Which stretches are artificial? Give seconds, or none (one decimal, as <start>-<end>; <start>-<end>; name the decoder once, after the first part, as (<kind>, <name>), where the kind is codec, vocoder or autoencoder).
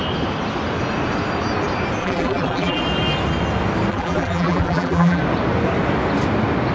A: 2.0-2.8 (vocoder, BigVGAN v2); 3.9-5.2